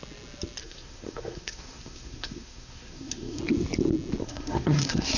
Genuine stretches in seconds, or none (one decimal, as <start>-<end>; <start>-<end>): 0.0-0.6; 3.4-4.2